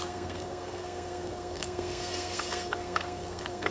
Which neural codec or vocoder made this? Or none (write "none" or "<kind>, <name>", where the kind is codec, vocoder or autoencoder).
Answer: codec, SNAC